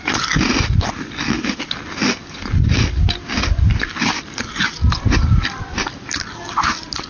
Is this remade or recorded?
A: recorded